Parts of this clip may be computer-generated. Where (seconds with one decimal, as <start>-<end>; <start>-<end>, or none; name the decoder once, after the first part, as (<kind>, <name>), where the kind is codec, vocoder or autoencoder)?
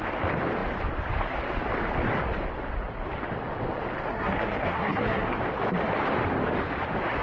4.1-5.4 (codec, SNAC)